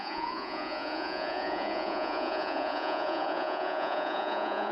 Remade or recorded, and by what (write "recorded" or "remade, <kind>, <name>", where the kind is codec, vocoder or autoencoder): remade, vocoder, Vocos